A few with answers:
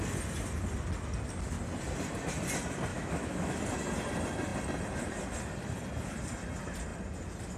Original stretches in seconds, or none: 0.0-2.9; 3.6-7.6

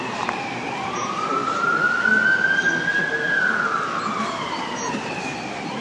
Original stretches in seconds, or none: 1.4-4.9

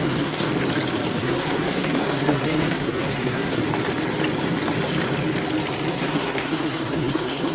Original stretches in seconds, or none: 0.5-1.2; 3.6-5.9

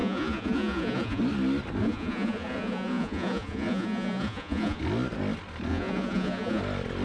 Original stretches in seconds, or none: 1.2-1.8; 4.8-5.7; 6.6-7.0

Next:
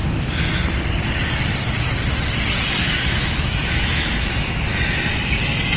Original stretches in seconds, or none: 0.0-2.8; 4.6-5.8

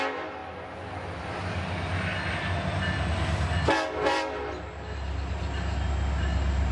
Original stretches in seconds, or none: 0.0-6.7